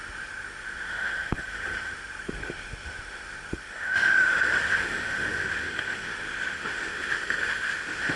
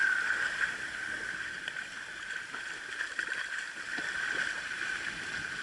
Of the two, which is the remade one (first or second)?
first